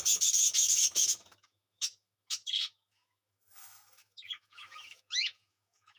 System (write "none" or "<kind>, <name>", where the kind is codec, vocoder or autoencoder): autoencoder, DAC-VAE